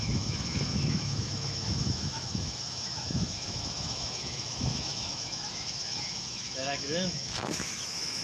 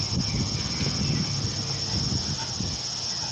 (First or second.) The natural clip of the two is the second